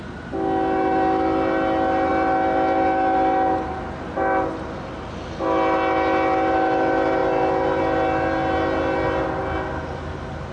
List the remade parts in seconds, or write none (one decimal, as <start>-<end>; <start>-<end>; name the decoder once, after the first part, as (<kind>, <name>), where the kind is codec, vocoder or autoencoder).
none